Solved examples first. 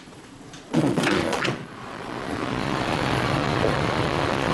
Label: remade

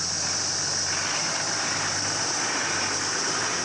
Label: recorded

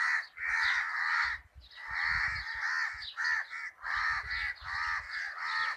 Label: recorded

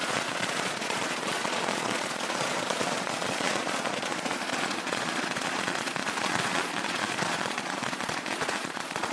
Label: remade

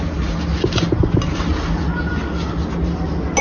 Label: recorded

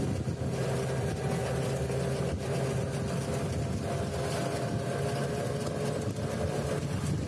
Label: recorded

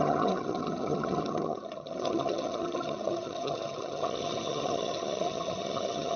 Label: remade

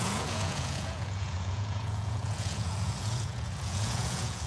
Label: remade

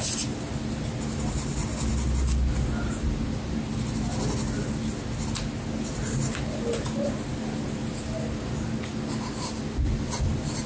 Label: recorded